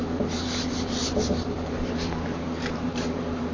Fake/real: fake